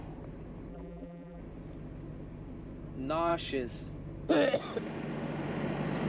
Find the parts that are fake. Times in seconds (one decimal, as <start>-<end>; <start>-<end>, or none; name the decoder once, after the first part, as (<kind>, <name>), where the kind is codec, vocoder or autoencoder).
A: 0.7-1.4 (vocoder, BigVGAN v2)